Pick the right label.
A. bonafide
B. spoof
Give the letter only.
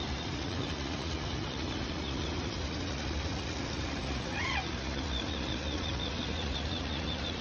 B